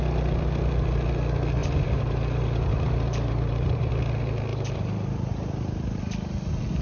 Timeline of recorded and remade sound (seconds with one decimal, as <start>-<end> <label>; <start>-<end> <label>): 0.0-1.6 recorded; 1.6-3.9 remade; 3.9-4.5 recorded; 4.5-6.0 remade; 6.0-6.8 recorded

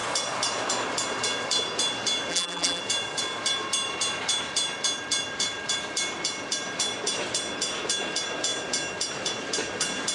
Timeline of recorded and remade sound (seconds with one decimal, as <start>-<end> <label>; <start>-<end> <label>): 0.0-2.3 recorded; 2.3-2.8 remade; 2.8-10.1 recorded

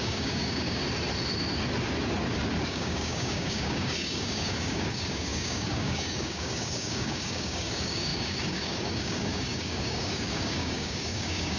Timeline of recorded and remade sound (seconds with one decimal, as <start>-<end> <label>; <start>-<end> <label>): 0.0-0.8 remade; 0.8-2.7 recorded; 2.7-11.6 remade